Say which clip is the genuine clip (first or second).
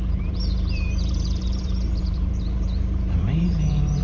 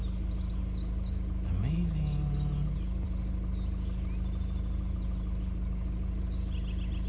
second